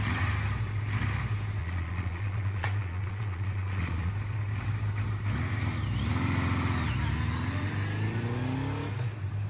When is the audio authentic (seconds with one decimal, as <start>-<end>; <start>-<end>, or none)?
0.0-1.6; 4.1-9.5